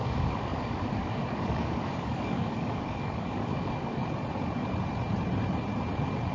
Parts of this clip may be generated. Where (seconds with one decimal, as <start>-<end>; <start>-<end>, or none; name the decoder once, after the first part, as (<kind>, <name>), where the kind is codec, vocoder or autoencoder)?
0.0-4.0 (codec, DAC)